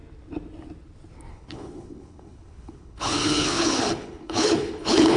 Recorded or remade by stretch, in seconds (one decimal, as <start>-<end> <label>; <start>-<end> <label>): 0.0-1.3 recorded; 1.3-5.2 remade